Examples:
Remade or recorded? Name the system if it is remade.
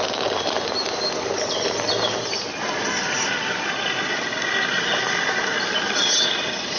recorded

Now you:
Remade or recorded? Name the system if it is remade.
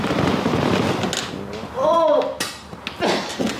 recorded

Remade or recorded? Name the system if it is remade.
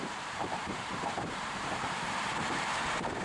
remade, vocoder, BigVGAN v2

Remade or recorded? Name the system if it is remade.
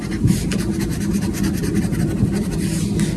recorded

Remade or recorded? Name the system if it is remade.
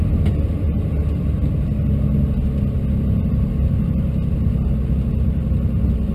recorded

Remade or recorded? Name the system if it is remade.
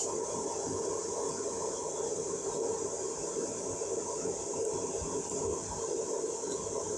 recorded